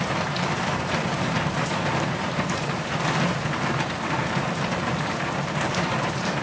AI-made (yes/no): yes